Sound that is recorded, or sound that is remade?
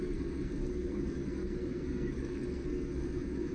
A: remade